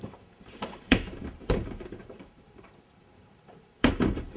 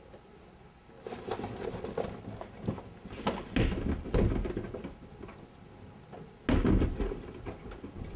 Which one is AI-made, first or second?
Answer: first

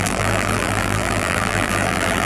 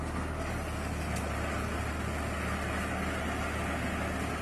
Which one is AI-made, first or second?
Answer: first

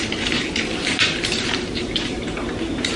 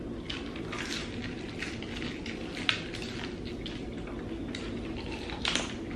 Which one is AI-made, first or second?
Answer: first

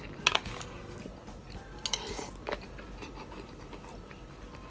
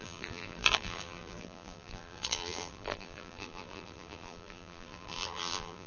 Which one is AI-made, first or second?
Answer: second